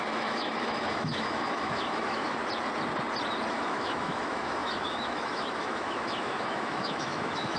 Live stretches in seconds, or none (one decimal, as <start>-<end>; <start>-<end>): 2.4-3.5